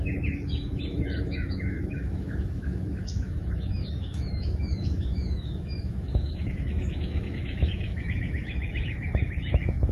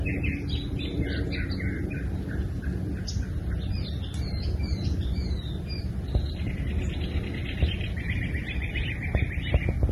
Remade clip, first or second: first